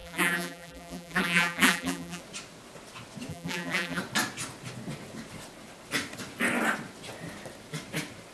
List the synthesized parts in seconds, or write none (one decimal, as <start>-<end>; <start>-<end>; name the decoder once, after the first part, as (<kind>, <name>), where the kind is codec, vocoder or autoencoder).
0.0-2.2 (vocoder, BigVGAN v2); 3.3-4.0